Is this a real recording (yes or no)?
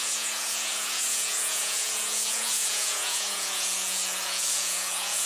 no